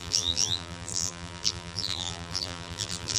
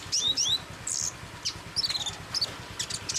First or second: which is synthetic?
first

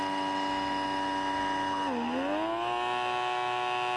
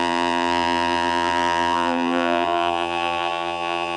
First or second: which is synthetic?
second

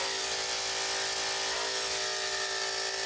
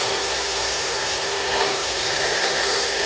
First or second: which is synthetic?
second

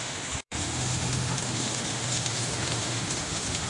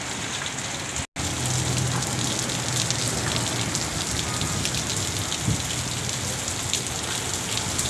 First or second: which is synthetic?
first